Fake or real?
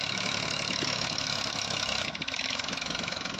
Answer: fake